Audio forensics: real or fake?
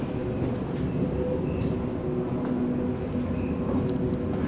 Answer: real